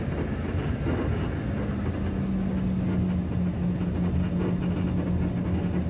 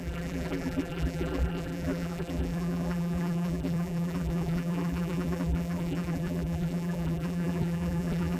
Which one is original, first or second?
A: first